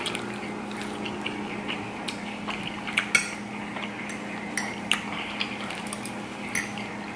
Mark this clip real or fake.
real